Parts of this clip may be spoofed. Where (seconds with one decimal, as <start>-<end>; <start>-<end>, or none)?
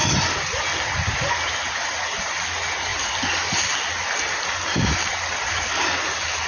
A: none